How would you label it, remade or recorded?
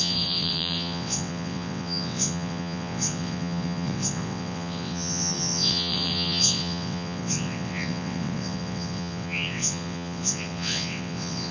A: remade